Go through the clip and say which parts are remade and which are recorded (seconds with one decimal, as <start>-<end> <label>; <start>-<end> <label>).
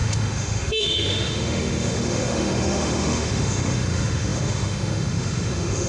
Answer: 0.0-5.9 remade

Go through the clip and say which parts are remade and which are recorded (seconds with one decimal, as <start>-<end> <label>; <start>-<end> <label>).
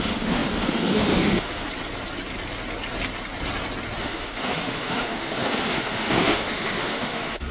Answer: 0.0-1.6 remade; 1.6-4.0 recorded; 4.0-7.5 remade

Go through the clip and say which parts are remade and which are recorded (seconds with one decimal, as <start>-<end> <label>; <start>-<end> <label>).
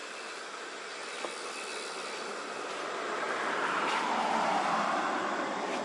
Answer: 0.0-5.8 recorded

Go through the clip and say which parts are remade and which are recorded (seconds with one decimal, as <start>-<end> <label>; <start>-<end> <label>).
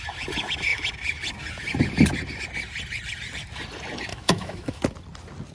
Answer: 0.0-4.1 recorded; 4.1-4.8 remade; 4.8-5.5 recorded